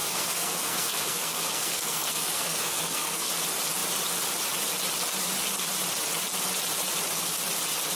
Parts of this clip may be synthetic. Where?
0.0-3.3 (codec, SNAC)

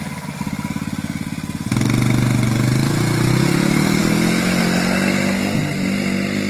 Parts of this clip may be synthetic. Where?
none